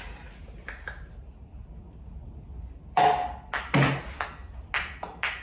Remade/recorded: recorded